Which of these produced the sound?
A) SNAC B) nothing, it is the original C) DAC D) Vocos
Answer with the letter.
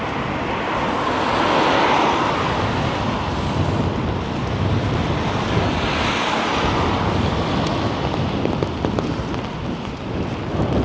B